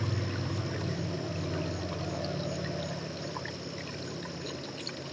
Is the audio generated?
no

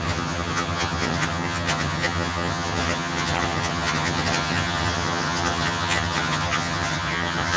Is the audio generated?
yes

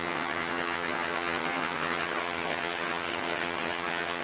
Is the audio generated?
yes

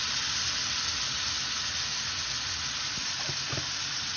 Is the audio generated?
no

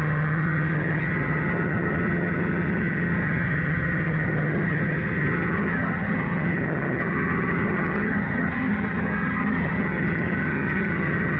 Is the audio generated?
yes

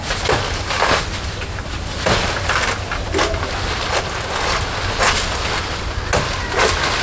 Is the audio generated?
no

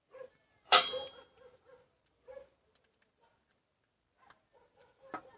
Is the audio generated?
no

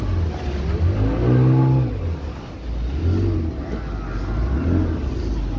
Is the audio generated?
no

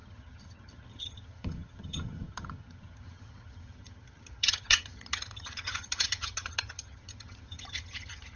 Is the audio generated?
yes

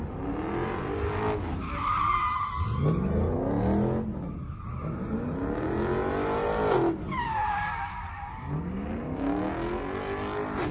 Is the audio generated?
no